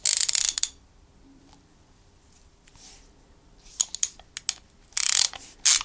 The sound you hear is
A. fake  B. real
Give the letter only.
B